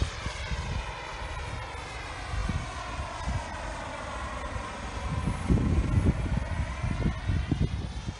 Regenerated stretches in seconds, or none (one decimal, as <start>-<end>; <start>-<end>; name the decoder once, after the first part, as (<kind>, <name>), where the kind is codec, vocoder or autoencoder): none